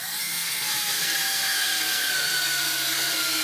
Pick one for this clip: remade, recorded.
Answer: remade